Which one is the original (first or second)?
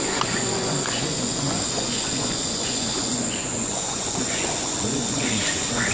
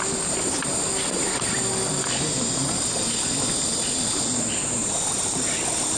second